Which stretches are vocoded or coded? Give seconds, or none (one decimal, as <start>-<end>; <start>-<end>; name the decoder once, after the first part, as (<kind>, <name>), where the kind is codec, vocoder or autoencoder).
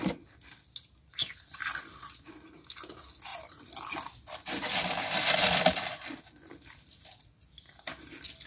none